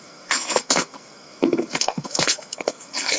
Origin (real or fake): fake